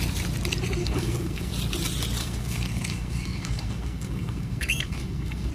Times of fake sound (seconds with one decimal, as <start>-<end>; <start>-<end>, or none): 0.8-1.5; 2.2-5.5